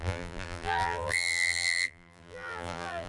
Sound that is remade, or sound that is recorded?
remade